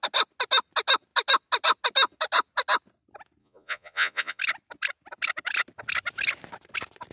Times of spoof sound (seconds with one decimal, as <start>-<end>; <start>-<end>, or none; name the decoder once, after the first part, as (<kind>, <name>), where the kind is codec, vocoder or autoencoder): 3.4-4.4 (vocoder, Vocos)